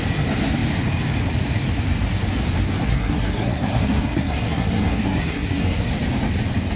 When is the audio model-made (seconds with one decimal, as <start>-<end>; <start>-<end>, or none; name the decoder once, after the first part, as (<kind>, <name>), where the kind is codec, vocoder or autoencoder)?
2.9-5.9 (codec, SNAC)